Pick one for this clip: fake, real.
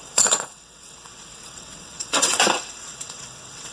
fake